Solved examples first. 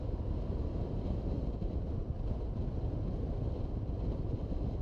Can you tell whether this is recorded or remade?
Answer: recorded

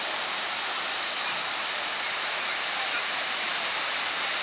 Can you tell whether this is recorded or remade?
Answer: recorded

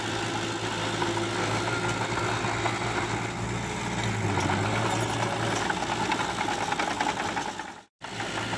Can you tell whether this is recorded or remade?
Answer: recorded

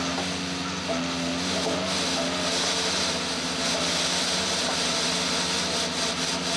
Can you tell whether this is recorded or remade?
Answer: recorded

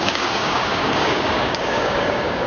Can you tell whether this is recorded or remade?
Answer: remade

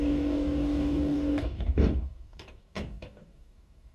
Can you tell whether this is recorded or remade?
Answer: remade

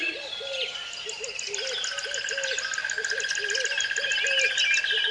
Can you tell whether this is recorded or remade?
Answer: recorded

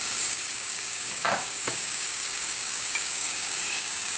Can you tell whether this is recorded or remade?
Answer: remade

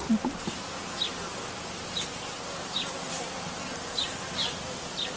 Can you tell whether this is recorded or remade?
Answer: recorded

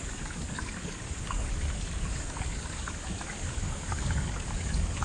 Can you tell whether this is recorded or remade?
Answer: remade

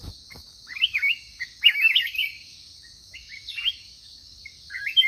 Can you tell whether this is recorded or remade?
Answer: remade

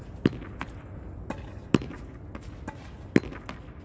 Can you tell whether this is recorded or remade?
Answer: recorded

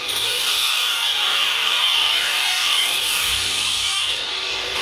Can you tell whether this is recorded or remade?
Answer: remade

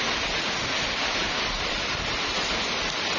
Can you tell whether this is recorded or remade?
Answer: recorded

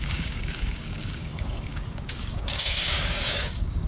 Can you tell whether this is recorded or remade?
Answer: remade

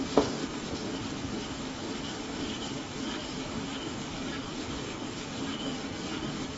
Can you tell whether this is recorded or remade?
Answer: remade